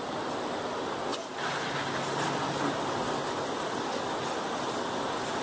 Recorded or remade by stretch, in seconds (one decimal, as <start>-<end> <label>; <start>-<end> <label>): 0.0-5.4 recorded